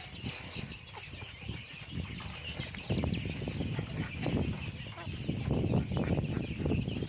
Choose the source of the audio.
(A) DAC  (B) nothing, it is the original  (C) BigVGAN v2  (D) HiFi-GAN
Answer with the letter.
B